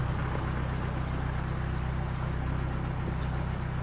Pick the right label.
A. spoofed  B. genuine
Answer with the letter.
B